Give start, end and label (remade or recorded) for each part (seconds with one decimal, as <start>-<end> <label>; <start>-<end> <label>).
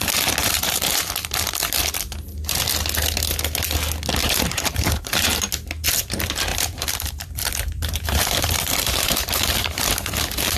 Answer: 0.0-0.4 recorded; 0.4-0.9 remade; 0.9-4.2 recorded; 4.2-5.4 remade; 5.4-6.5 recorded; 6.5-10.6 remade